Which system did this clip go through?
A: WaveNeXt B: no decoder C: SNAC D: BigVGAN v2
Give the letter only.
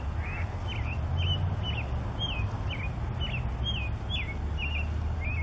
B